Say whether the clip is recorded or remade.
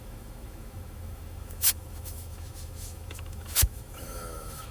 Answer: remade